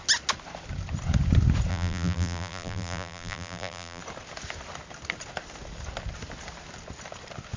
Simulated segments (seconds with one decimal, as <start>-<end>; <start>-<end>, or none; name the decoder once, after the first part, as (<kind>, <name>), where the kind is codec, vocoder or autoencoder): 1.7-4.0 (vocoder, BigVGAN v2)